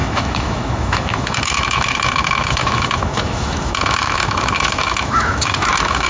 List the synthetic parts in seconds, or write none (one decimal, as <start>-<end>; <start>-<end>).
0.0-6.1